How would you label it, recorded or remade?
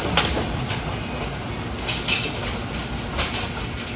recorded